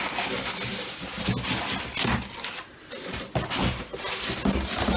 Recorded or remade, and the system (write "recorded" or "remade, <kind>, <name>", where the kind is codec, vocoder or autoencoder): recorded